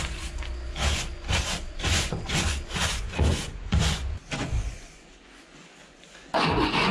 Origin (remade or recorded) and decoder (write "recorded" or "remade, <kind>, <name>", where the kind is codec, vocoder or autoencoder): remade, vocoder, Vocos